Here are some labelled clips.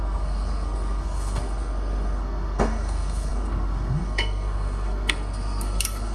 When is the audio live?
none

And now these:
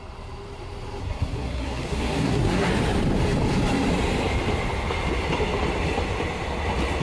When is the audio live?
0.0-1.0; 2.7-7.0

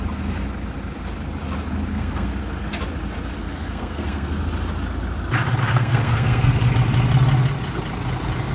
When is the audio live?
0.0-1.9; 2.4-3.4; 4.3-5.6; 6.7-8.5

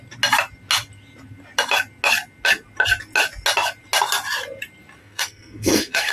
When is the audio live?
0.0-5.0

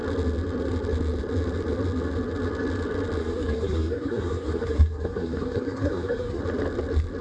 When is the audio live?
0.0-3.2; 6.4-7.2